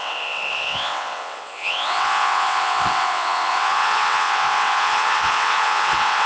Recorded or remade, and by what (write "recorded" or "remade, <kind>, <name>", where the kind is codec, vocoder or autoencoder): remade, vocoder, WaveNeXt